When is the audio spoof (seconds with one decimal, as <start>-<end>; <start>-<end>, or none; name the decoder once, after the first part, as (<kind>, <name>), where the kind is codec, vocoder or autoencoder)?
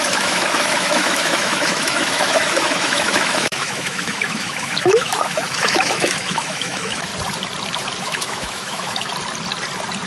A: 0.0-7.1 (autoencoder, DAC-VAE); 8.0-9.1